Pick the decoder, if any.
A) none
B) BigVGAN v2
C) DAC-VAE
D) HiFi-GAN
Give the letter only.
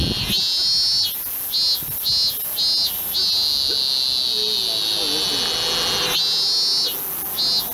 A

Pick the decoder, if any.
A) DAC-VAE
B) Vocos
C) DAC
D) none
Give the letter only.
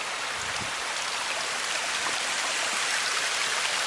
D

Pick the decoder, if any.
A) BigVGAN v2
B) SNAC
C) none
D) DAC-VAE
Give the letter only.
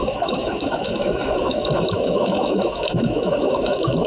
D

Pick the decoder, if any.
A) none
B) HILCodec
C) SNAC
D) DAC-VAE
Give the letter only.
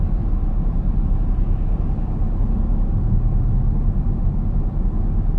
A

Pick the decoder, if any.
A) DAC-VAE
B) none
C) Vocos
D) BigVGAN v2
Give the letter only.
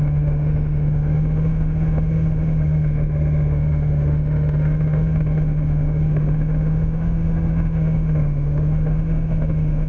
A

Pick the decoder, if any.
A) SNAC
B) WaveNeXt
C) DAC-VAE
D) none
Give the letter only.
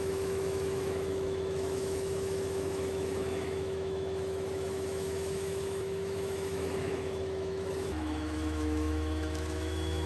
C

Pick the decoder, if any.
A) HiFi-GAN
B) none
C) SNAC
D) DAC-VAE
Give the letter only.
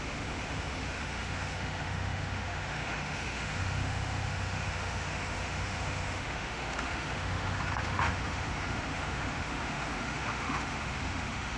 D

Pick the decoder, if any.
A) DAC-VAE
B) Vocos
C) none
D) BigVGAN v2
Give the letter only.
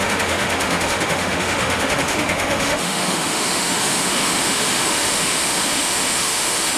A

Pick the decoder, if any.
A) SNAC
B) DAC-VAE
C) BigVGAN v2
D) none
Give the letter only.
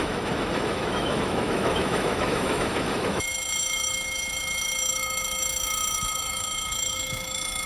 B